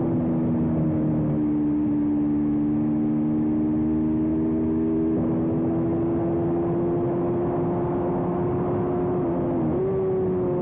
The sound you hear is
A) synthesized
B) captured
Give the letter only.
B